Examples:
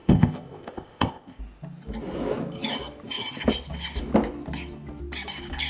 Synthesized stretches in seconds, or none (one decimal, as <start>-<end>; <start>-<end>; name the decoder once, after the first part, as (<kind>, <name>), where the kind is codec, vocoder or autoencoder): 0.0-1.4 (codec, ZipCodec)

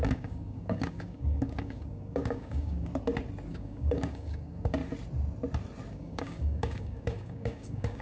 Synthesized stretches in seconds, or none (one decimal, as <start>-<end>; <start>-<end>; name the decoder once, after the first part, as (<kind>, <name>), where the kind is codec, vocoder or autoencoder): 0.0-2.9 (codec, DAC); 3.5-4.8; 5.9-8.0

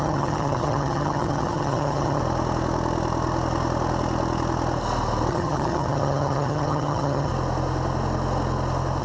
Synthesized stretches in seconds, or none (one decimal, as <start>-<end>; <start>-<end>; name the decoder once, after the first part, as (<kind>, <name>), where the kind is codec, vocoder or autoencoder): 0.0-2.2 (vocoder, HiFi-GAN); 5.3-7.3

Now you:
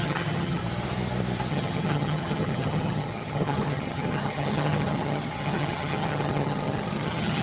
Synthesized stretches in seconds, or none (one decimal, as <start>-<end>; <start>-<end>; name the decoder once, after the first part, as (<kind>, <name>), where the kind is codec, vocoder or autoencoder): 0.0-0.6 (vocoder, HiFi-GAN); 1.5-7.4

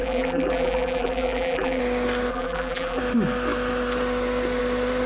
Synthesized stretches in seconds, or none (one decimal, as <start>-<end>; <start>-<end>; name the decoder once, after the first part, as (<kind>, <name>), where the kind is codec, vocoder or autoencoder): 0.0-1.8 (vocoder, BigVGAN v2); 2.3-3.0

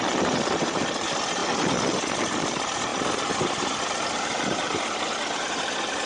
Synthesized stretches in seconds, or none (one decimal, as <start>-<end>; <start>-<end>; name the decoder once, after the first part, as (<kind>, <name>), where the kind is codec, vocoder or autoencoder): 0.0-2.9 (vocoder, BigVGAN v2); 5.5-6.1

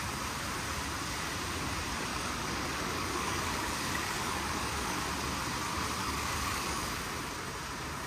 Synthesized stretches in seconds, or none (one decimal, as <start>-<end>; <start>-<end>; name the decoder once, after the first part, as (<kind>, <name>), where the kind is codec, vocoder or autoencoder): 2.1-5.0 (codec, DAC); 6.0-7.0

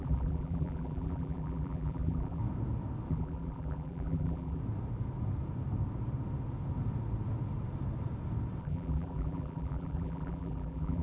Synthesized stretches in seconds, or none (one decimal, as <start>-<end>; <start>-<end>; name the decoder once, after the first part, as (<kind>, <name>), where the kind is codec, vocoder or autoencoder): 0.0-2.4 (vocoder, BigVGAN v2); 3.1-4.6; 8.6-11.0